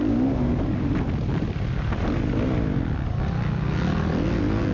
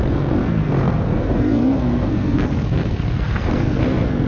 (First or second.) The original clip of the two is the first